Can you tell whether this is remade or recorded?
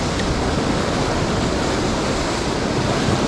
recorded